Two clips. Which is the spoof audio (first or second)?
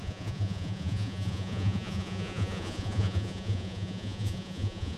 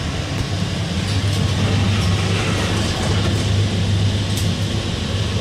first